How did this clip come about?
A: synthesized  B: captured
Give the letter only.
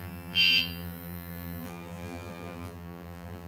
A